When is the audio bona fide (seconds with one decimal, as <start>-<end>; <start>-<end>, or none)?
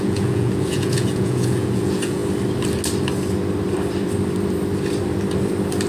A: 2.2-5.9